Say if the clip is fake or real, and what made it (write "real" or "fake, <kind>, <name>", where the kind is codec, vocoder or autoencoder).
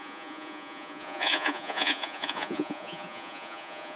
fake, vocoder, Vocos